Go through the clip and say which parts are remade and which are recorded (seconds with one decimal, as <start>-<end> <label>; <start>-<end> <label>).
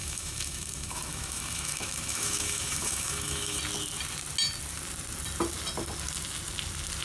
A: 0.0-3.6 remade; 3.6-7.0 recorded